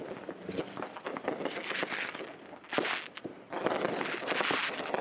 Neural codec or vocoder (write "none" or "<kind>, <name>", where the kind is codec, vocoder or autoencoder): none